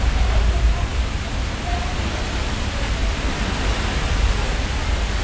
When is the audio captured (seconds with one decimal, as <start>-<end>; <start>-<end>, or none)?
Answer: 0.0-5.2